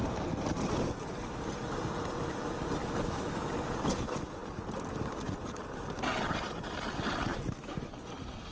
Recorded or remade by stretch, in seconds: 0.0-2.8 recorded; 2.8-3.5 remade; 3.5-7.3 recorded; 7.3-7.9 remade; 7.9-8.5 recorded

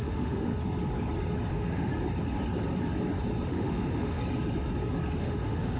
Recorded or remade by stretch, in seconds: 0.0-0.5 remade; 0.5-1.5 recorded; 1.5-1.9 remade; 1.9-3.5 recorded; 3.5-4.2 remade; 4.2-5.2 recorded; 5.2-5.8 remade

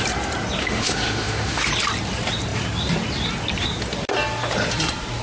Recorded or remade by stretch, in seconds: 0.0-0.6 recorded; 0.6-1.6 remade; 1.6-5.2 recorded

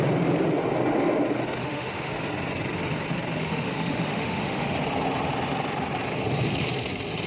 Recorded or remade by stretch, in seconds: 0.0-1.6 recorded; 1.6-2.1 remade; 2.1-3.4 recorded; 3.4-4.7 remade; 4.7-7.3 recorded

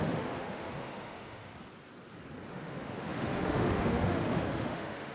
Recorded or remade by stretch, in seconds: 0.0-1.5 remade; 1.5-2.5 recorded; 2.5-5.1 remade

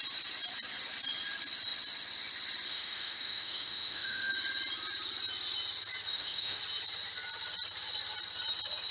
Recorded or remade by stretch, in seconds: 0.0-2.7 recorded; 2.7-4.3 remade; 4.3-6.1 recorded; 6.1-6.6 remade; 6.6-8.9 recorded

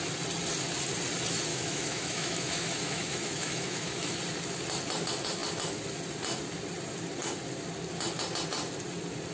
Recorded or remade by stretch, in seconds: 0.0-1.5 recorded; 1.5-4.2 remade; 4.2-9.3 recorded